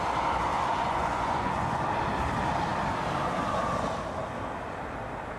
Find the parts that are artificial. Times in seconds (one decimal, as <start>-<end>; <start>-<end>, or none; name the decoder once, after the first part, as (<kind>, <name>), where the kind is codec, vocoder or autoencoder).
0.5-1.8 (vocoder, Vocos)